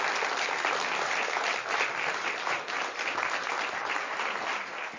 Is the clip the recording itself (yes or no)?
yes